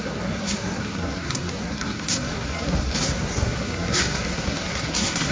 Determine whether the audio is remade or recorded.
remade